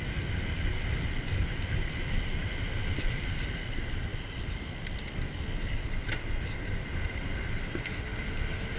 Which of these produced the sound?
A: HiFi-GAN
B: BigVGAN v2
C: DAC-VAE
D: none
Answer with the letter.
D